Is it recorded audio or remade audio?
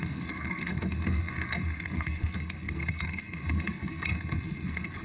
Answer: remade